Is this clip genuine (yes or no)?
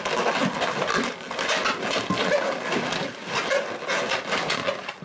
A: yes